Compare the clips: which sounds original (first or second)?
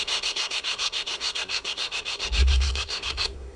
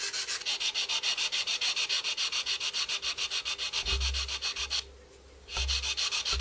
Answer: second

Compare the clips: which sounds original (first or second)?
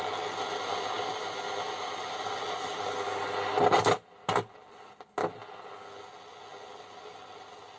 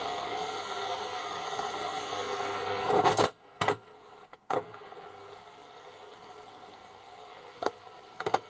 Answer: first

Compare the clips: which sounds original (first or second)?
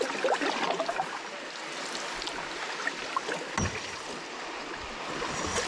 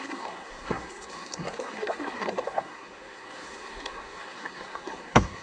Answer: first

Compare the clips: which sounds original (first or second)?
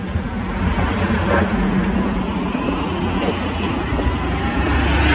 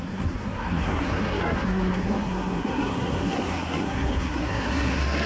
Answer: first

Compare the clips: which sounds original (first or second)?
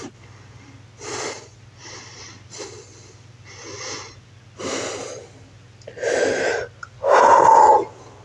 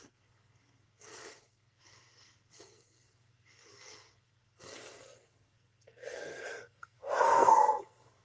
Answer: first